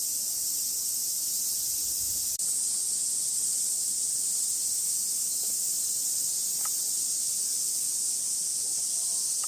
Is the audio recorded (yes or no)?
yes